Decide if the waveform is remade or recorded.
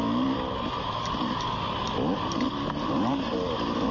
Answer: recorded